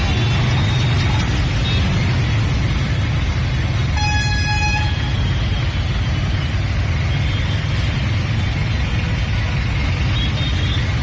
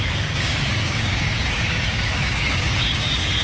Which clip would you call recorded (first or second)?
first